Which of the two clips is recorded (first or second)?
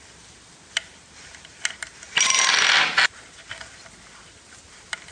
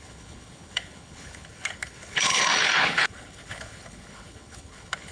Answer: first